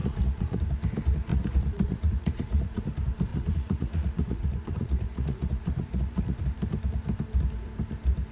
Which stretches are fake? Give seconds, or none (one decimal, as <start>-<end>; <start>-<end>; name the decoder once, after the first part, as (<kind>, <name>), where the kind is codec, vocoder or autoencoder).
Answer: 0.0-0.6 (vocoder, Vocos); 1.3-2.8; 3.3-6.4